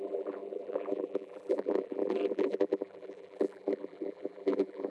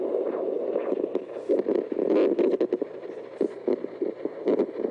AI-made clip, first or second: first